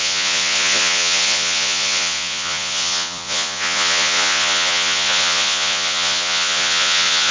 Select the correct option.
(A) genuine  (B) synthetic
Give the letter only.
B